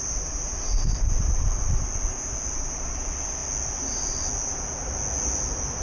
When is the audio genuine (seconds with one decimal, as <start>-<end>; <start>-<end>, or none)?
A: 0.0-5.8